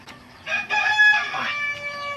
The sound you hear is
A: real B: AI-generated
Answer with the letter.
A